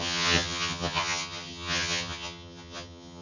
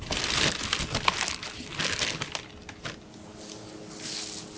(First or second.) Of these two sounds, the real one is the second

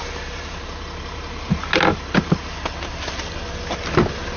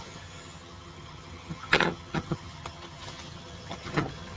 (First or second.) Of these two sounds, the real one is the first